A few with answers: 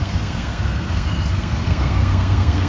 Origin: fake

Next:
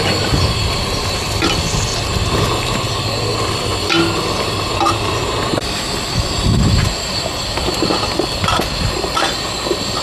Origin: real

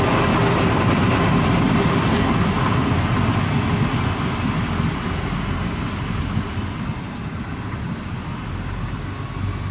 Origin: real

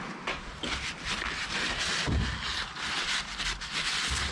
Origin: real